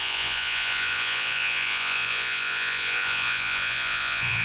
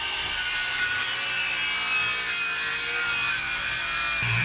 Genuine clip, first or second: second